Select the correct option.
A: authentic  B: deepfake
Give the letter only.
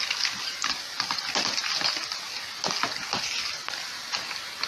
A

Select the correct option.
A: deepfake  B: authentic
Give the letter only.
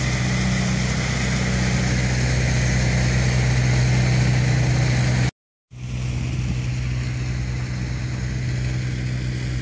B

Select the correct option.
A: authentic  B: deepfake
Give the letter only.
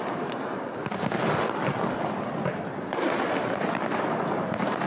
B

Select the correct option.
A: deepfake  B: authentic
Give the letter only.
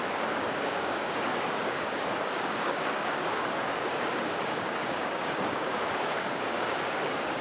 A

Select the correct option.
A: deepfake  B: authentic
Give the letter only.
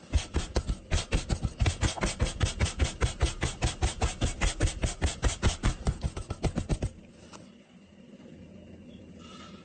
B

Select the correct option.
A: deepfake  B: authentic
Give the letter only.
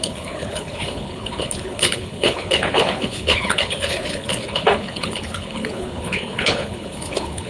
A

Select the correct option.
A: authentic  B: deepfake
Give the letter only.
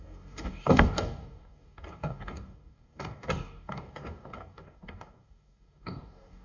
B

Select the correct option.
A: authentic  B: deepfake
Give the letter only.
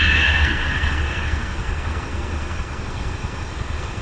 B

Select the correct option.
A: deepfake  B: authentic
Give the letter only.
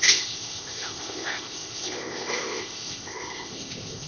A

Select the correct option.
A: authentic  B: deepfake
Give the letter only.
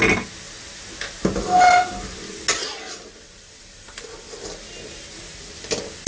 A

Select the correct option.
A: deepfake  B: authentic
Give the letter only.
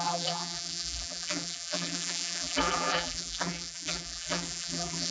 A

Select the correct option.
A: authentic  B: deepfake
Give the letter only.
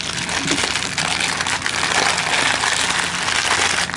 A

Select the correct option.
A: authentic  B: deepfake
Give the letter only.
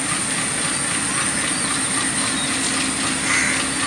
A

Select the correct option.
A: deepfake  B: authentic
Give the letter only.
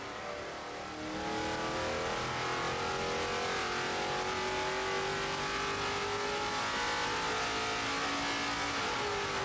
B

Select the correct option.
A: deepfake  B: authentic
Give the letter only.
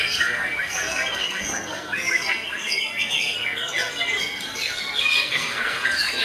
A